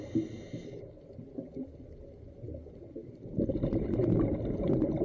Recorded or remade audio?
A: recorded